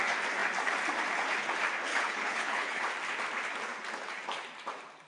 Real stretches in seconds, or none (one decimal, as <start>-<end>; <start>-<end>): 0.0-1.9; 2.8-5.1

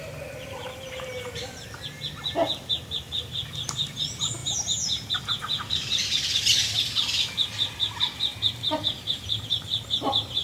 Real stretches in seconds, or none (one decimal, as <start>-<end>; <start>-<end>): 0.0-10.4

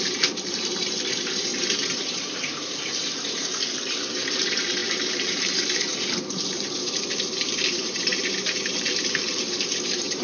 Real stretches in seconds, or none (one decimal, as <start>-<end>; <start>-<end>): none